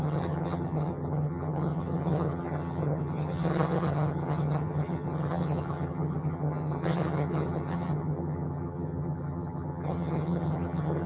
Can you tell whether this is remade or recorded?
remade